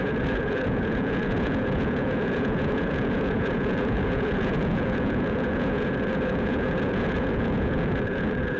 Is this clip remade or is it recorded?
remade